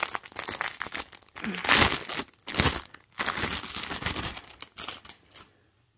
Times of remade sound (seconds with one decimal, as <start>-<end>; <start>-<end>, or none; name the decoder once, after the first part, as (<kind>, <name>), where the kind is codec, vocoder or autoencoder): none